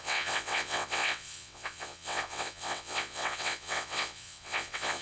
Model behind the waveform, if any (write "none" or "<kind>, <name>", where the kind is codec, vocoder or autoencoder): vocoder, WaveNeXt